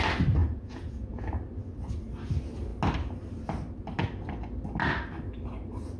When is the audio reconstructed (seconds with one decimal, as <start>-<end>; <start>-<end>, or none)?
0.4-1.2